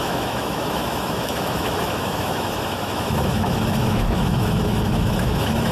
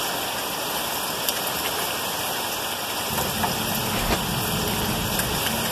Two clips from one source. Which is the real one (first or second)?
second